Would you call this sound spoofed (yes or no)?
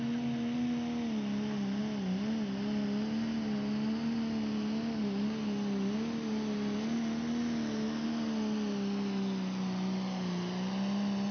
no